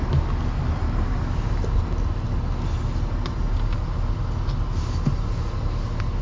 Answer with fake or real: real